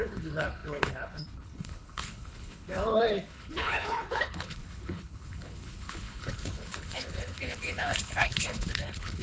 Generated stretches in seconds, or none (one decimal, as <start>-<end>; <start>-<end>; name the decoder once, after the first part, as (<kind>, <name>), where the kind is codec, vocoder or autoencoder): 0.0-9.2 (codec, HILCodec)

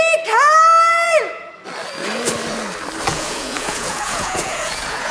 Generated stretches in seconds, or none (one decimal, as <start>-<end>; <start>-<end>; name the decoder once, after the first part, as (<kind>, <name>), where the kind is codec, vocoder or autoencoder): 0.9-1.5 (vocoder, Vocos); 3.1-5.1

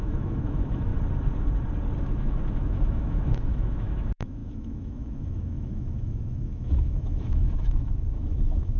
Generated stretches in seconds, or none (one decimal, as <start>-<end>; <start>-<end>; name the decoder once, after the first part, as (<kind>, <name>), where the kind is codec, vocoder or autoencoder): 0.0-0.9 (autoencoder, DAC-VAE); 2.0-8.8